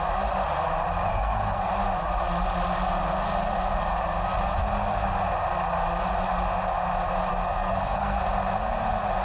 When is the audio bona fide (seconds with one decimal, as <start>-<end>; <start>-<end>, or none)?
0.0-1.1; 1.7-7.3; 8.2-9.2